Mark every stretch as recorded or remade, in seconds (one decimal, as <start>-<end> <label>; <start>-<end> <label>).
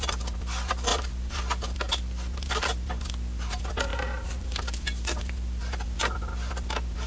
0.0-0.9 recorded; 0.9-1.4 remade; 1.4-3.9 recorded; 3.9-5.2 remade; 5.2-7.1 recorded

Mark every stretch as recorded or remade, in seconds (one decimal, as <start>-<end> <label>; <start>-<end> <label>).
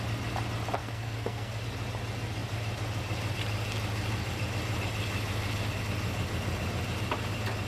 0.0-0.8 recorded; 0.8-1.6 remade; 1.6-7.7 recorded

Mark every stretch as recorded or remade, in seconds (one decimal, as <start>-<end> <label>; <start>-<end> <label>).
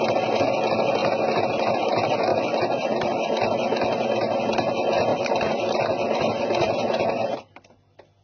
0.0-2.3 recorded; 2.3-4.4 remade; 4.4-5.1 recorded; 5.1-7.6 remade; 7.6-8.2 recorded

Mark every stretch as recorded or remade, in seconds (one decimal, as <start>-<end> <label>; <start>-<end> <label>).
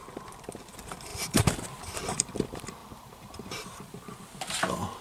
0.0-1.1 recorded; 1.1-1.8 remade; 1.8-2.8 recorded; 2.8-4.2 remade; 4.2-5.0 recorded